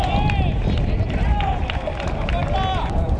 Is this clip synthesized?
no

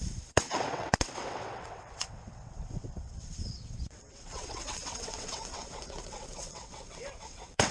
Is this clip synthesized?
yes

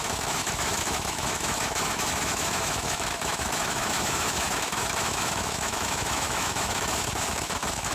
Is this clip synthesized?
yes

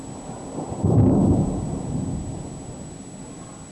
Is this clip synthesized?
no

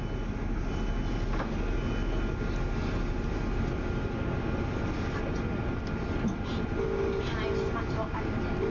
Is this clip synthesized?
no